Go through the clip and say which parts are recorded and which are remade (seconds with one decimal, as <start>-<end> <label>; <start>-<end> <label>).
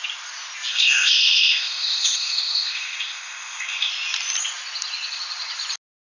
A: 0.0-0.7 recorded; 0.7-3.9 remade; 3.9-6.1 recorded